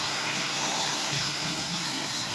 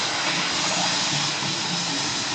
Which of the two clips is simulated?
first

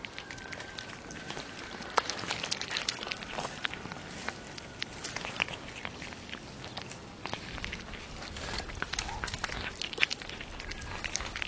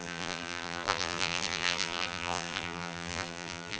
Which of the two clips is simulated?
second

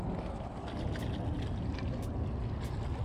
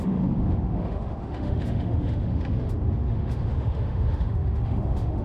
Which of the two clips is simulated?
second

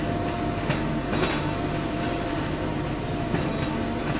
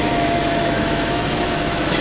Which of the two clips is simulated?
second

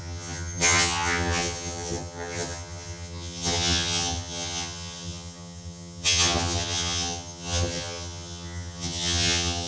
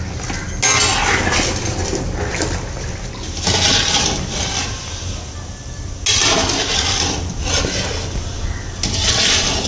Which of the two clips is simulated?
first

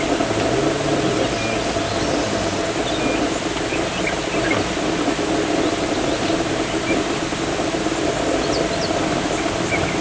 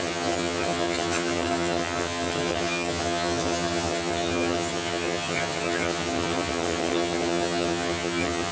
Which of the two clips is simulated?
second